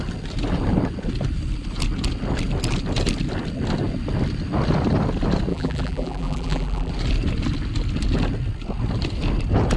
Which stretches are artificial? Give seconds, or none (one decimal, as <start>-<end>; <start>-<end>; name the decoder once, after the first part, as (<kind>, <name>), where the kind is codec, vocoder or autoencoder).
5.5-6.9 (vocoder, BigVGAN v2)